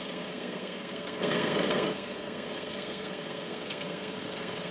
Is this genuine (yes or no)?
no